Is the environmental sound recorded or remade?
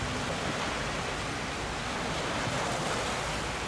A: recorded